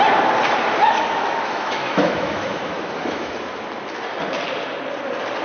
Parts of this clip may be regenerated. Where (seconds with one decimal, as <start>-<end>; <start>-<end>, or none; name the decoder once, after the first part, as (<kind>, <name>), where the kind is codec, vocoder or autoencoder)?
0.8-3.3 (autoencoder, DAC-VAE)